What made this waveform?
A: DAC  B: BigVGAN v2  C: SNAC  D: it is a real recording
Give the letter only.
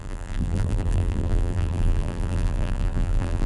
B